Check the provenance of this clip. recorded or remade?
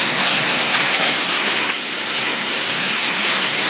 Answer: remade